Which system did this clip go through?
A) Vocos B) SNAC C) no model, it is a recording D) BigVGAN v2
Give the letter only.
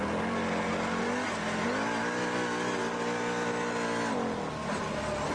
C